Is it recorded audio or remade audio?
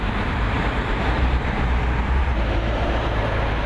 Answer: remade